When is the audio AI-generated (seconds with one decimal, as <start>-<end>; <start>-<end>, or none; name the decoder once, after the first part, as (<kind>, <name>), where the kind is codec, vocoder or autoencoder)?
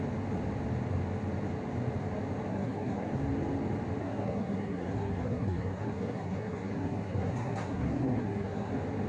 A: 2.5-3.1 (codec, SNAC); 4.0-8.7